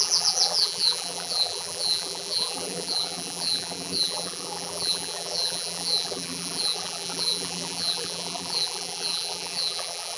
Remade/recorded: remade